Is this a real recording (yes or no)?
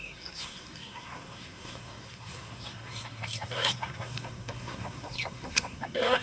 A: no